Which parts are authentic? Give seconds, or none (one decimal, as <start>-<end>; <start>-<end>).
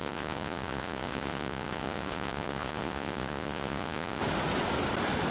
4.2-5.3